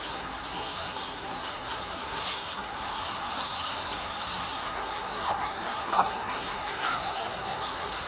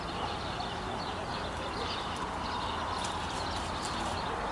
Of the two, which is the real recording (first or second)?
second